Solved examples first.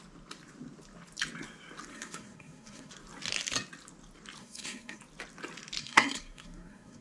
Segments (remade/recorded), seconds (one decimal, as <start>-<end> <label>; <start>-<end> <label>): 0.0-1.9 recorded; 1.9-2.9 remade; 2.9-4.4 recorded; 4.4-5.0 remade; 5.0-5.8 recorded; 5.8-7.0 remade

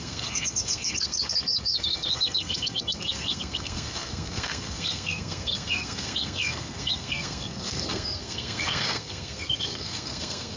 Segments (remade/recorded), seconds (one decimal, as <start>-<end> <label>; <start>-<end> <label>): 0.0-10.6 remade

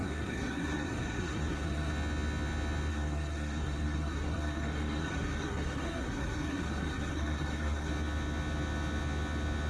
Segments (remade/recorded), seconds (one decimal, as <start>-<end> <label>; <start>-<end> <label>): 0.0-1.9 remade; 1.9-2.9 recorded; 2.9-7.9 remade; 7.9-9.7 recorded

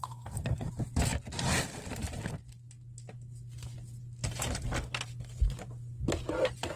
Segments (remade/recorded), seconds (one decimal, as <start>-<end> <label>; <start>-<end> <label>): 0.0-0.7 remade; 0.7-6.8 recorded